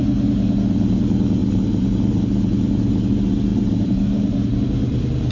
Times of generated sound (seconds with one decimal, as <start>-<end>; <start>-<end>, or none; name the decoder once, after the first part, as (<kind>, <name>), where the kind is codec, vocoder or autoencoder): 1.4-2.2 (vocoder, BigVGAN v2); 3.5-4.6